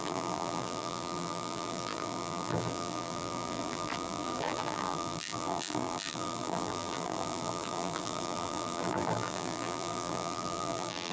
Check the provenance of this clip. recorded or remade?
remade